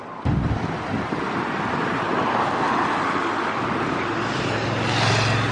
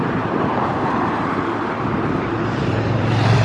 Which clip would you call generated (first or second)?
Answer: second